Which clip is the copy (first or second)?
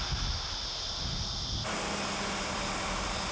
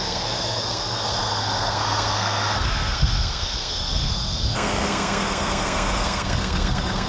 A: second